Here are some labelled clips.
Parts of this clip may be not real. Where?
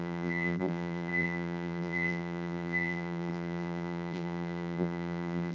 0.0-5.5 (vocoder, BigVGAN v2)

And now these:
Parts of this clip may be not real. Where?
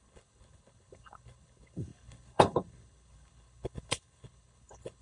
0.0-5.0 (codec, HILCodec)